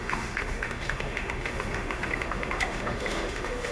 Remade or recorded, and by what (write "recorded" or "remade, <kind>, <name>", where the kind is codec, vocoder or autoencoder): remade, autoencoder, DAC-VAE